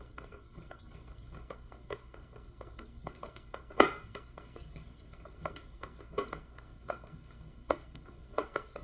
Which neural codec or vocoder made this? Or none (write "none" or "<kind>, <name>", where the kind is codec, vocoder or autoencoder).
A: codec, SNAC